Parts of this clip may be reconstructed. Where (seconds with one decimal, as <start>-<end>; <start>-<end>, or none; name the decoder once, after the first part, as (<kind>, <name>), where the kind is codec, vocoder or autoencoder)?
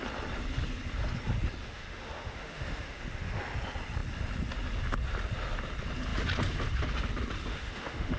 1.6-3.4 (autoencoder, DAC-VAE); 7.5-8.2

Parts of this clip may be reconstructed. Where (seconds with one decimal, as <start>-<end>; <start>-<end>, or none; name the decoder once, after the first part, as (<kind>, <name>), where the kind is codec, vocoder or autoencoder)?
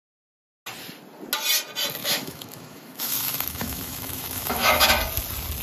2.0-4.9 (autoencoder, DAC-VAE)